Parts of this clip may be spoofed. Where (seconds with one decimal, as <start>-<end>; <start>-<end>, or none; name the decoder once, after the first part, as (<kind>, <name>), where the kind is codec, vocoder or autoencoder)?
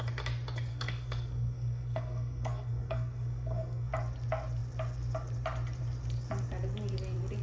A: 0.7-3.9 (codec, SNAC)